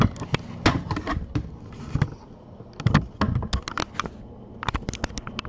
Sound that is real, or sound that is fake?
real